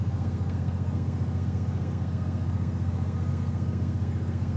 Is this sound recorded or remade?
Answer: remade